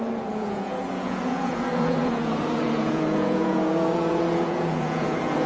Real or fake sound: fake